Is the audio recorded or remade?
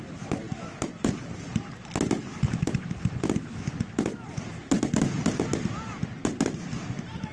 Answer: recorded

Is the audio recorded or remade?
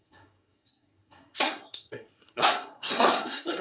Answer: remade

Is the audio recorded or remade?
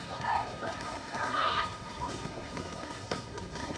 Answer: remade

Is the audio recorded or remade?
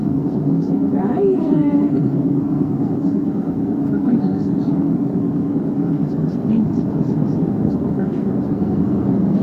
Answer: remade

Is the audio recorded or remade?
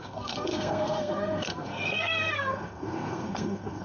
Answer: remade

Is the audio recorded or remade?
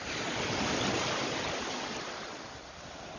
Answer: recorded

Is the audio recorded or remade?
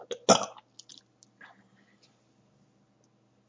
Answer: recorded